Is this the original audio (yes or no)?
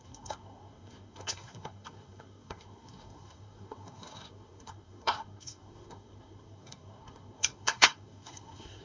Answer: no